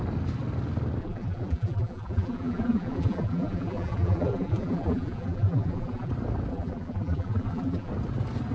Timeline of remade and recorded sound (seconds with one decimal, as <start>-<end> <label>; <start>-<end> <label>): 0.0-1.0 recorded; 1.0-6.1 remade; 6.1-6.5 recorded; 6.5-7.9 remade; 7.9-8.5 recorded